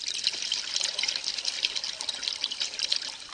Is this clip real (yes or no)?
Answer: yes